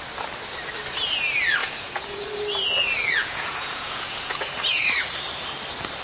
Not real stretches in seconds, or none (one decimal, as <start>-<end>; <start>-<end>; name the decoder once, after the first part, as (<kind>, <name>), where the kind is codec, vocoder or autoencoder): 1.6-2.2 (vocoder, Vocos); 3.2-4.3